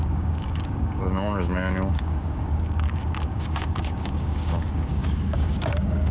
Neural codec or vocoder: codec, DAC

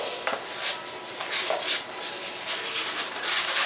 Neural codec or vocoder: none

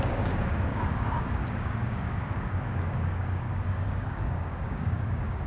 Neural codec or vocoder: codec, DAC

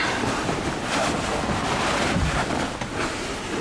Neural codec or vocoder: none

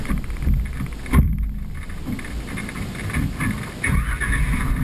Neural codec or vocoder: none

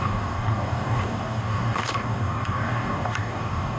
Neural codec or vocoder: codec, DAC